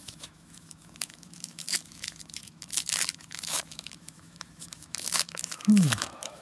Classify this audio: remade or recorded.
remade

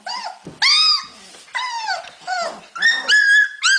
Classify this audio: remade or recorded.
recorded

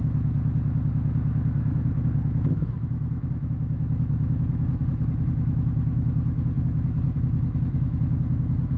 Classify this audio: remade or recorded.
remade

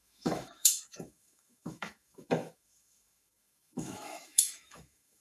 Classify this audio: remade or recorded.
remade